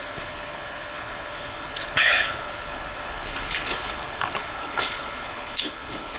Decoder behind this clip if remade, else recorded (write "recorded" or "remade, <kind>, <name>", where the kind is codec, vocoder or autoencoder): remade, codec, HILCodec